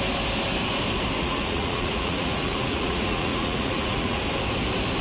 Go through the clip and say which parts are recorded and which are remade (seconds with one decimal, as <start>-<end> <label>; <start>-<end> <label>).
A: 0.0-1.2 recorded; 1.2-4.2 remade; 4.2-5.0 recorded